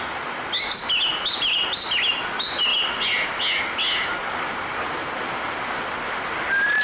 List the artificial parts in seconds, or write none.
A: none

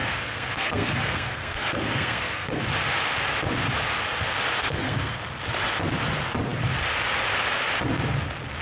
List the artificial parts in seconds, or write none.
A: 0.0-2.6 (codec, SNAC); 4.6-5.2

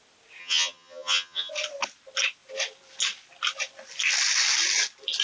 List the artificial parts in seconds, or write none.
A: 0.4-1.5 (vocoder, HiFi-GAN)

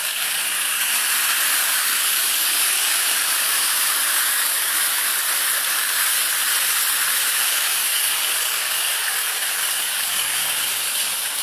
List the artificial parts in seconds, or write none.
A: 0.0-0.9 (codec, DAC); 1.6-5.1; 5.7-6.3; 7.2-11.4